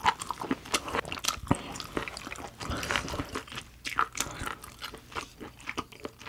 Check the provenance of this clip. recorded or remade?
recorded